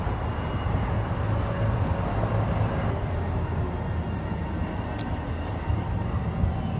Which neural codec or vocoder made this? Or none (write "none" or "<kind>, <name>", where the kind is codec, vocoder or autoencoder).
none